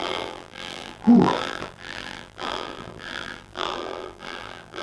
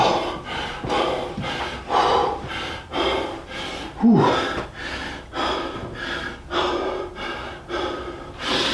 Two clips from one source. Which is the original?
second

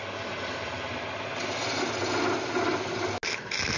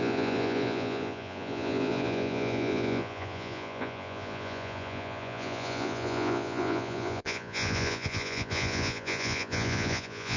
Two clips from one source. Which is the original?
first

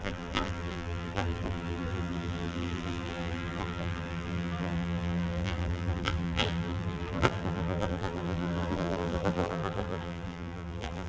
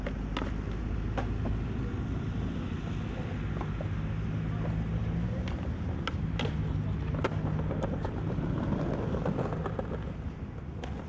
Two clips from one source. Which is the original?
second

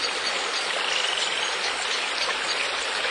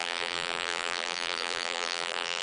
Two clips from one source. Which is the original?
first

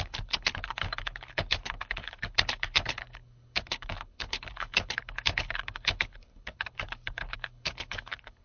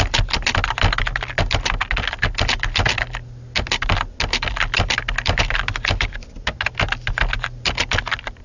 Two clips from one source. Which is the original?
second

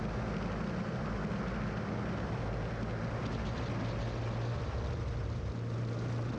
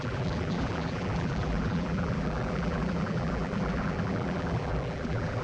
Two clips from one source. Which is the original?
first